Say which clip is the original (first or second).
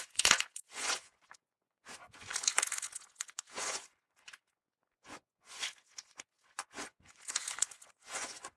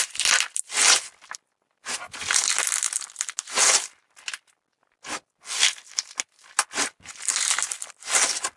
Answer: second